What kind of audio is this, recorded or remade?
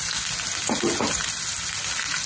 recorded